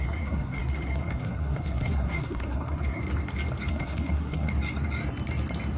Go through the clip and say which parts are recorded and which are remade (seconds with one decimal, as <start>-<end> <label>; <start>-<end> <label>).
0.0-3.0 remade; 3.0-3.7 recorded; 3.7-4.5 remade; 4.5-5.8 recorded